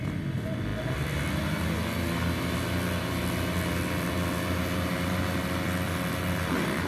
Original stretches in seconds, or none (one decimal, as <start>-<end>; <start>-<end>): 0.0-6.9